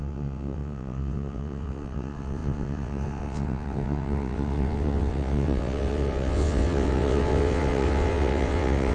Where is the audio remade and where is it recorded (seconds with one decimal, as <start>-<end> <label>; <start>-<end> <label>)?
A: 0.0-8.9 remade